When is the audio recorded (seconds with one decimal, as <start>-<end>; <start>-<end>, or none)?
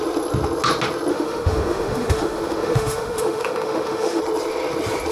0.0-1.1; 4.2-5.1